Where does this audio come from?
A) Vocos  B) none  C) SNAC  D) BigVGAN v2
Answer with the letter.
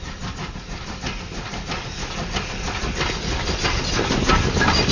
B